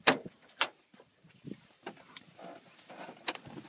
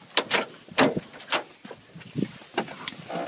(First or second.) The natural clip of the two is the second